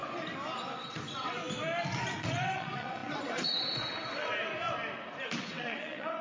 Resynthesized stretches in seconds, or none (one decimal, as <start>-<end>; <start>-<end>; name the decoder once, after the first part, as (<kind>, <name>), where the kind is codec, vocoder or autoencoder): 0.8-1.4 (vocoder, WaveNeXt); 2.2-4.3; 5.4-6.2